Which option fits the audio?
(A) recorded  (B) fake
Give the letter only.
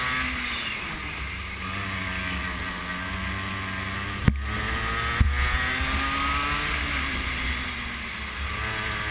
A